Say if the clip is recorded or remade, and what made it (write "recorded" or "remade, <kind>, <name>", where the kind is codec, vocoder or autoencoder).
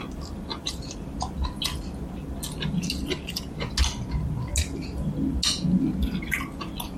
recorded